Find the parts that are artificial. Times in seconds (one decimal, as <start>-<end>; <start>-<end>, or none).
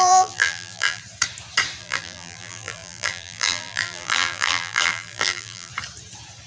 0.0-1.0; 1.8-5.7